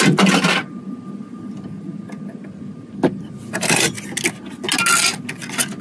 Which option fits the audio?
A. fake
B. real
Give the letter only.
B